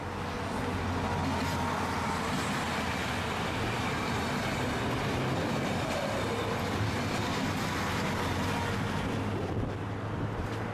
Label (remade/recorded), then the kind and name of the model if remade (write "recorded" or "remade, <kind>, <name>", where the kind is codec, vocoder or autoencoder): recorded